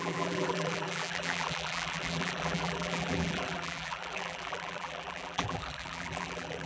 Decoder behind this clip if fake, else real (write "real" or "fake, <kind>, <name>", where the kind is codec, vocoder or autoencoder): fake, vocoder, BigVGAN v2